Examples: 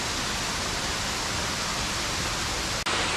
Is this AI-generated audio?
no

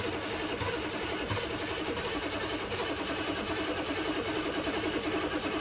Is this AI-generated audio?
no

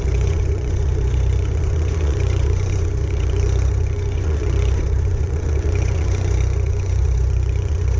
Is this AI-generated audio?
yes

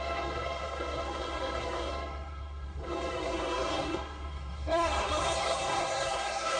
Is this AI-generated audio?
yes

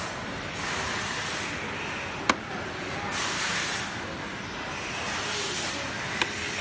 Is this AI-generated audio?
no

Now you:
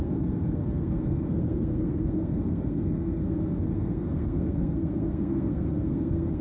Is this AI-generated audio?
yes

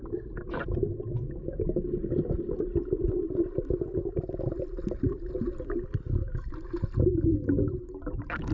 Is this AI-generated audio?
no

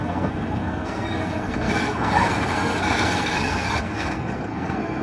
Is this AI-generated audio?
yes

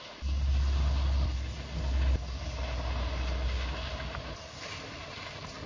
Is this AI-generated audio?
no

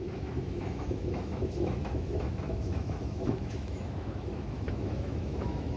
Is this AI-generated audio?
yes